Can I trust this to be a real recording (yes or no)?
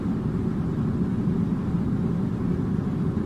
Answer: yes